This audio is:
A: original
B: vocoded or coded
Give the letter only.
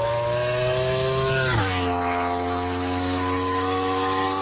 B